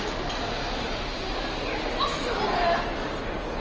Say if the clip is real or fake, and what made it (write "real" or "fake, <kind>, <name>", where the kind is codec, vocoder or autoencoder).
real